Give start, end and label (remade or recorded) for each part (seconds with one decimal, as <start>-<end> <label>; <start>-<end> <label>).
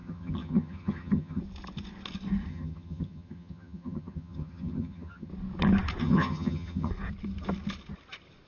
0.0-1.4 remade; 1.4-2.5 recorded; 2.5-5.3 remade; 5.3-6.0 recorded; 6.0-6.9 remade; 6.9-8.5 recorded